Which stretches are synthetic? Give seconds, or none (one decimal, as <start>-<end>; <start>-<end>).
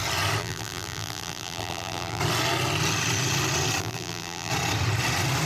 0.4-2.2; 3.8-4.5